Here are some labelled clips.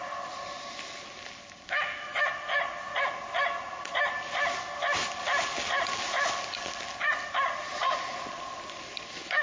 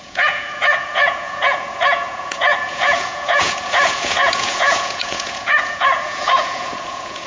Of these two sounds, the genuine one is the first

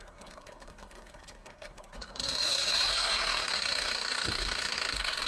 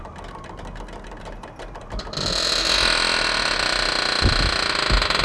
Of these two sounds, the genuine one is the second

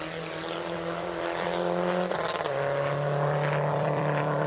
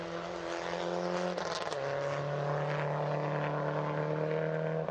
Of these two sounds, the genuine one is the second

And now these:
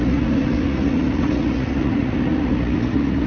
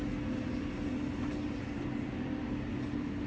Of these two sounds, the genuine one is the second